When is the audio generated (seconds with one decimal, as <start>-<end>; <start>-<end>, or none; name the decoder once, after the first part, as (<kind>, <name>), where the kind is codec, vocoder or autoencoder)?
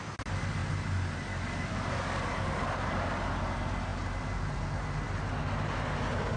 1.3-3.3 (codec, DAC)